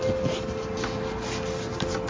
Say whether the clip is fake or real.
real